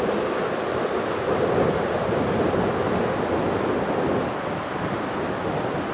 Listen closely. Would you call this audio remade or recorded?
recorded